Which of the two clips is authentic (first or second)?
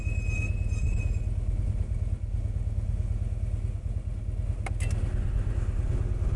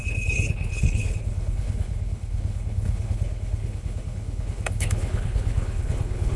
first